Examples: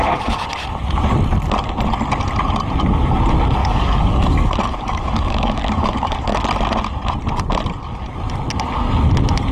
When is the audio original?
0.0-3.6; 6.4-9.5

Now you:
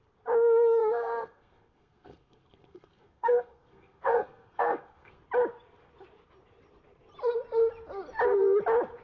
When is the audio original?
0.0-0.8; 5.2-9.0

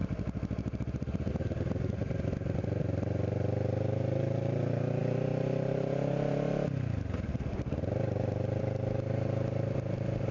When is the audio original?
0.0-10.3

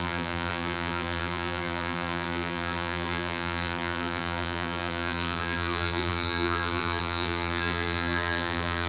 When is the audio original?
none

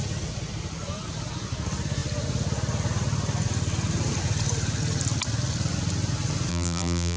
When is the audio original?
0.0-6.5